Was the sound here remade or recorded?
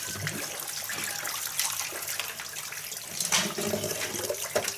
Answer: recorded